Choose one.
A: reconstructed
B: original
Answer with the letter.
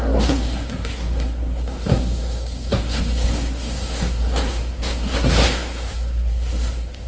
A